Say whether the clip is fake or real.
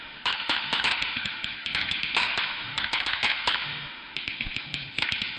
fake